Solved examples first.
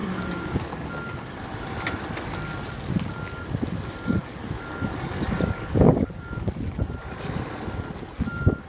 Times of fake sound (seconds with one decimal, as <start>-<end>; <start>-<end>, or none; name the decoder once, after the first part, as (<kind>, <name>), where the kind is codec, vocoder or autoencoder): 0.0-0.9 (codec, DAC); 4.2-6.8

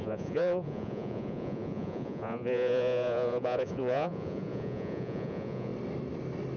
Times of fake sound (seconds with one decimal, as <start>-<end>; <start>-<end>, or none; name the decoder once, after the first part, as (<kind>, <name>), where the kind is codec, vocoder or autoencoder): 0.0-5.7 (vocoder, Vocos)

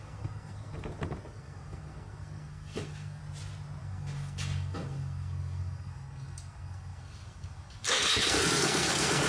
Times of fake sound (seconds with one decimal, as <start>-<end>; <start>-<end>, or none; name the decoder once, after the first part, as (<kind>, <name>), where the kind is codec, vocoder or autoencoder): 0.0-0.7 (codec, SNAC); 1.3-3.2; 3.8-9.3

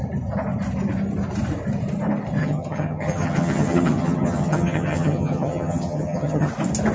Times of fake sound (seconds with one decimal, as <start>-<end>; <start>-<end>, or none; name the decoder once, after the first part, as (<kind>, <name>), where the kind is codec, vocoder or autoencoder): 2.4-6.5 (vocoder, HiFi-GAN)